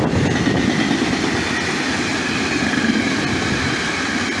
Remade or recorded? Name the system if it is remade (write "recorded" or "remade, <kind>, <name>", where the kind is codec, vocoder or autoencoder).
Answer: recorded